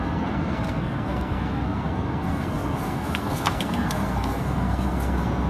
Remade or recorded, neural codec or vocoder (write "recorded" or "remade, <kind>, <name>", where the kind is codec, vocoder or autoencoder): remade, codec, SNAC